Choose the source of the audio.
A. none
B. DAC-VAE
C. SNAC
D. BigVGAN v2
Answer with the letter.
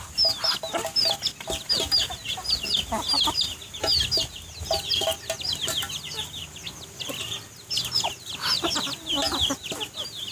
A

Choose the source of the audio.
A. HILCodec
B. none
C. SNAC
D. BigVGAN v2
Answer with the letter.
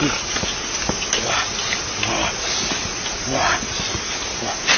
B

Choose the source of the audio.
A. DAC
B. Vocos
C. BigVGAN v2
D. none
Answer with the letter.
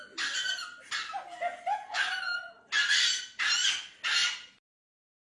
D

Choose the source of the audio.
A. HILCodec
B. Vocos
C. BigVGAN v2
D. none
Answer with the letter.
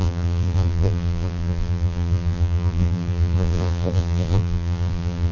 C